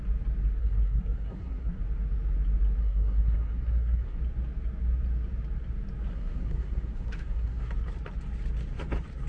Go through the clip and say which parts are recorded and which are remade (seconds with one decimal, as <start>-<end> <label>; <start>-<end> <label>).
0.0-0.6 recorded; 0.6-1.8 remade; 1.8-2.8 recorded; 2.8-4.2 remade; 4.2-6.1 recorded; 6.1-7.7 remade; 7.7-9.3 recorded